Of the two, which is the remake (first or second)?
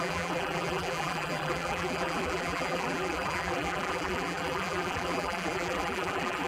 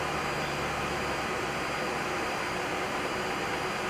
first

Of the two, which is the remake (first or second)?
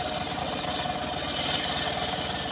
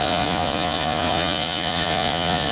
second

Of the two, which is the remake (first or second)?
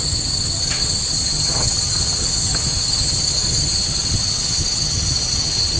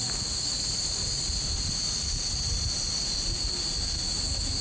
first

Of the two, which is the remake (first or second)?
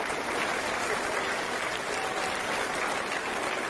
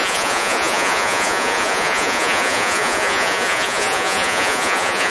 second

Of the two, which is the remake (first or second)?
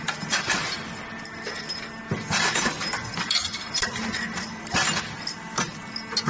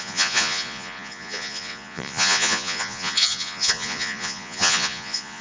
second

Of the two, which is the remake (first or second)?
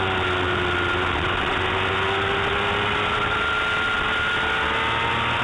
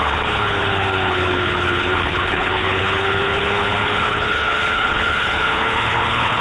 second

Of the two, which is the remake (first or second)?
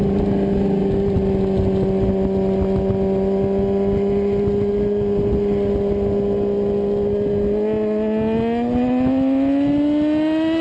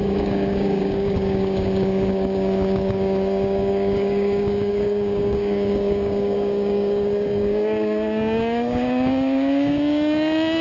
second